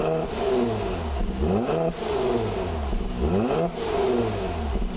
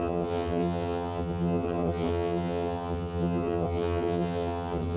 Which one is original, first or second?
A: first